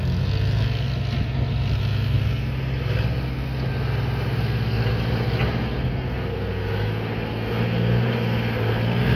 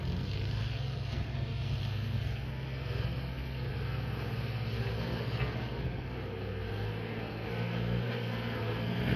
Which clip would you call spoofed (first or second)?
second